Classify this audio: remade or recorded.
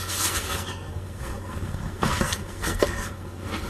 remade